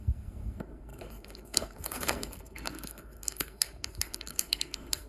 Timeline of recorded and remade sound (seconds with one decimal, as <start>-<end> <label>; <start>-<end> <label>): 0.0-5.1 remade

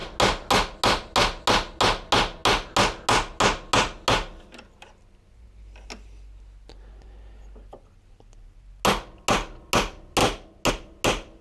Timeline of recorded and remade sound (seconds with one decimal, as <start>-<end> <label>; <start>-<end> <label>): 0.0-11.4 recorded

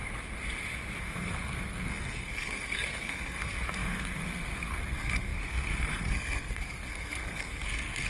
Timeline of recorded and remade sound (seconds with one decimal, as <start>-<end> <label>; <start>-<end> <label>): 0.0-1.0 recorded; 1.0-8.1 remade

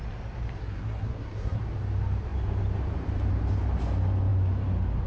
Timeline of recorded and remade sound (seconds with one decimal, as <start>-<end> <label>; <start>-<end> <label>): 0.0-0.6 recorded; 0.6-1.6 remade; 1.6-5.1 recorded